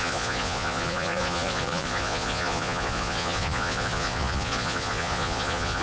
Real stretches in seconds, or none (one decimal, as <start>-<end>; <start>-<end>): none